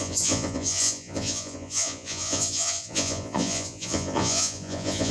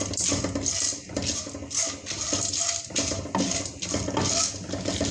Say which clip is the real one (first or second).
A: second